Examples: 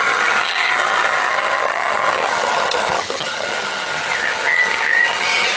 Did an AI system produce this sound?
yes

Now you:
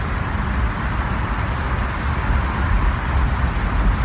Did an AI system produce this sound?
no